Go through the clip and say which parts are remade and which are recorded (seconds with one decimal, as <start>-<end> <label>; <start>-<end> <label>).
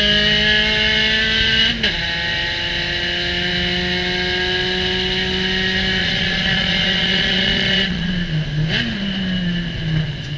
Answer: 0.0-6.0 recorded; 6.0-8.1 remade; 8.1-10.4 recorded